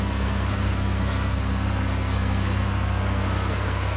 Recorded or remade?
remade